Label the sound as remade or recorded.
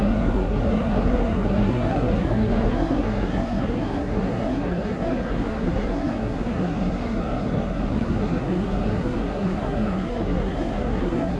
remade